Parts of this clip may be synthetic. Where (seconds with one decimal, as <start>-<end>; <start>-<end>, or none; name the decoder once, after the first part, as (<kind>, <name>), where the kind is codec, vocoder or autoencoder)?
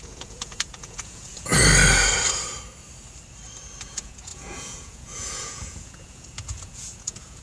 0.0-1.5 (vocoder, Vocos); 3.9-7.4